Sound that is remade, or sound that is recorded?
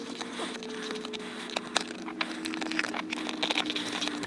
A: recorded